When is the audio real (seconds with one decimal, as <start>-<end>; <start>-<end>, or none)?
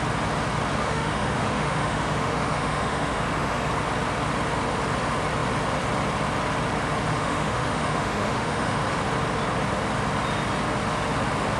0.0-0.8; 3.7-7.1; 8.8-11.6